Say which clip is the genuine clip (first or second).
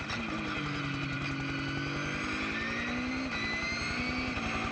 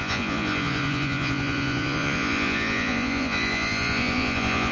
first